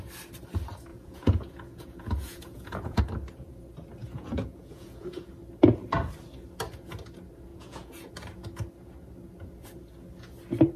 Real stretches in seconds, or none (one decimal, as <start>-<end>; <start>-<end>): 0.0-0.9; 3.0-4.0; 5.3-7.5; 8.1-10.8